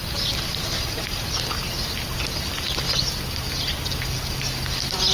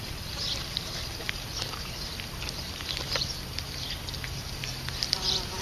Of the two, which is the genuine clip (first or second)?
first